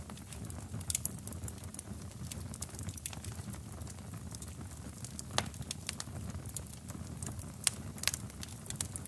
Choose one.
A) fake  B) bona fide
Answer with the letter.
B